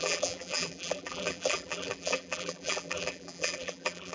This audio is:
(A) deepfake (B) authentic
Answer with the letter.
A